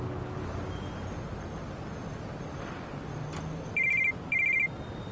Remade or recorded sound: recorded